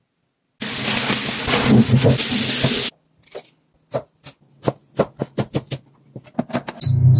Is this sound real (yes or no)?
yes